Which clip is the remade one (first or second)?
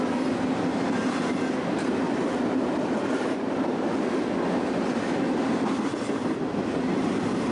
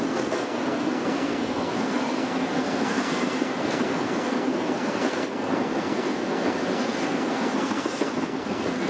second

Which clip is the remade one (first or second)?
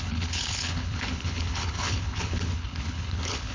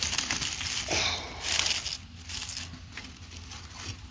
first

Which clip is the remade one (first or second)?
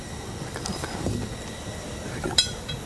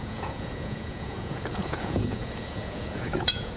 second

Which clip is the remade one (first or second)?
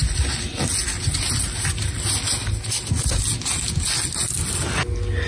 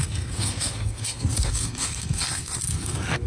second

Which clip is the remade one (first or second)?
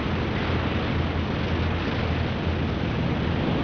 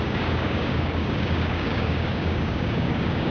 second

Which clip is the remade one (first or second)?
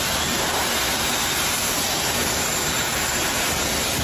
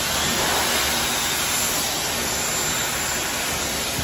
first